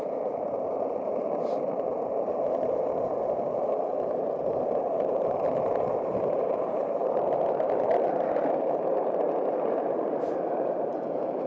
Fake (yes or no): yes